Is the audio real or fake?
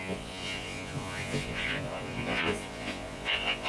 fake